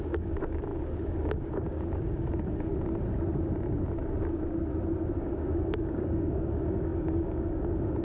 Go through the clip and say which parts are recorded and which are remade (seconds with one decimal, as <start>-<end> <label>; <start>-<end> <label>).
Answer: 0.0-2.7 remade; 2.7-5.2 recorded; 5.2-8.0 remade